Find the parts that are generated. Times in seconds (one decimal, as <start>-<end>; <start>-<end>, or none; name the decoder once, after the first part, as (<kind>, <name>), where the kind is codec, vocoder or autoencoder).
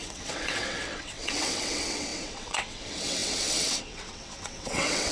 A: 0.0-5.1 (vocoder, WaveNeXt)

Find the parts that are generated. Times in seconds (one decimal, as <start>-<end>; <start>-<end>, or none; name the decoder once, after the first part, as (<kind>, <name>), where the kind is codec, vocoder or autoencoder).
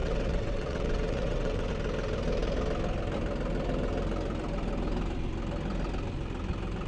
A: 0.0-1.7 (vocoder, WaveNeXt)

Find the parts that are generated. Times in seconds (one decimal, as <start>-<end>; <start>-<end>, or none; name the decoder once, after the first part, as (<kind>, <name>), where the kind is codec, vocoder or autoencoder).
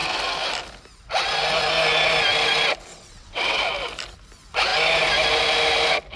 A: 2.9-3.6 (vocoder, WaveNeXt)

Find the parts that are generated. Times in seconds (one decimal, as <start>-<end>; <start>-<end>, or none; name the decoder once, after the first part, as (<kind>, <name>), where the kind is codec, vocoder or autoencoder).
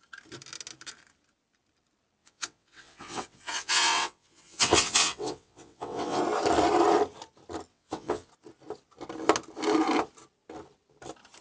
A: 2.2-6.2 (vocoder, WaveNeXt); 7.7-8.3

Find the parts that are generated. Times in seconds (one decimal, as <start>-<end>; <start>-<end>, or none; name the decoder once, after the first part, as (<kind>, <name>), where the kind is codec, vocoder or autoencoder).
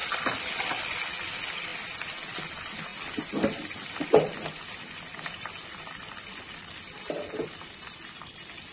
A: none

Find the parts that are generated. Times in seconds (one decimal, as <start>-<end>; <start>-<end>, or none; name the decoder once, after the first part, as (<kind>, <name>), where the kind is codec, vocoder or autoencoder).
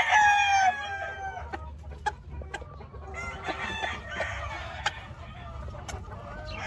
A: none